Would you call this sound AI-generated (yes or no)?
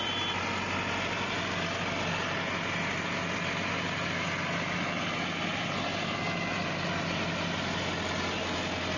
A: no